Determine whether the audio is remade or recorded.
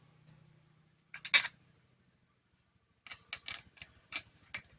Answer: recorded